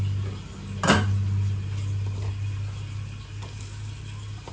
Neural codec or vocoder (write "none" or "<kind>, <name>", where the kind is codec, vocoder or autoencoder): none